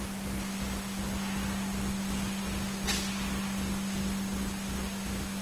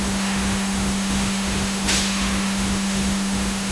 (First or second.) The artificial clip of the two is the second